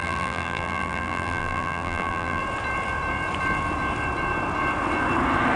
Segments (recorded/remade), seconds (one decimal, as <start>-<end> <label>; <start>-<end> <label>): 0.0-2.4 remade; 2.4-5.6 recorded